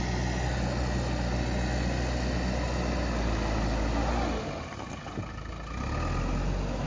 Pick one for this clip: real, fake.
real